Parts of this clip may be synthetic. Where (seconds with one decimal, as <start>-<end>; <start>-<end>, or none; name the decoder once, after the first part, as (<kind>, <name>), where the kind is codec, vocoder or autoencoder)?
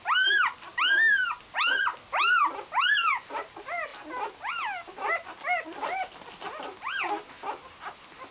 none